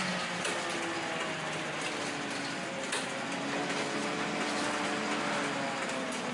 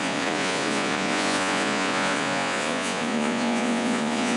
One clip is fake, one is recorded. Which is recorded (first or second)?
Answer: first